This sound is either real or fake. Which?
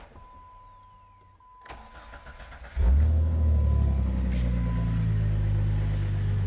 real